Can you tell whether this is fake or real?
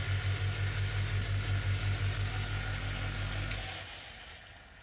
real